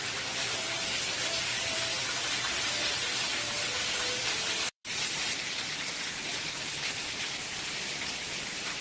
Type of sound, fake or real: fake